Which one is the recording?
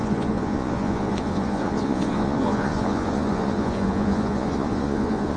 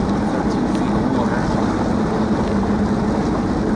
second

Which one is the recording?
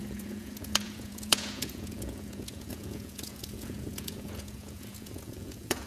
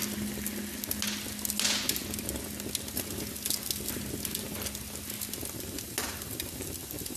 second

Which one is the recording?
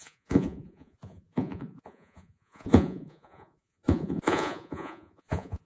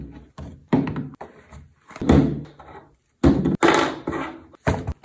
second